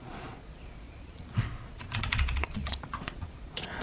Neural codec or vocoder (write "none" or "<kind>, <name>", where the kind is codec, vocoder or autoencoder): vocoder, Vocos